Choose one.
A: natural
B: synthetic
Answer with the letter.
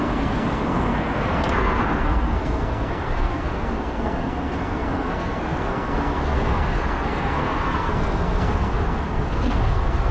B